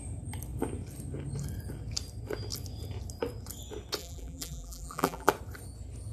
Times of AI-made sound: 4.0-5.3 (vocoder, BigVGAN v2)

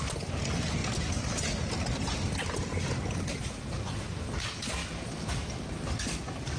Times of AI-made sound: none

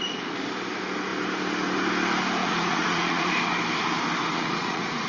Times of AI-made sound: 2.4-3.3 (vocoder, Vocos); 4.2-5.1